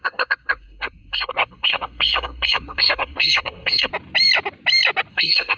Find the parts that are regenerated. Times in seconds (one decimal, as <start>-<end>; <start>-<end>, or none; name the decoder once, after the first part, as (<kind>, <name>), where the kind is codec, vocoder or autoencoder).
0.0-3.9 (codec, SNAC); 5.1-5.6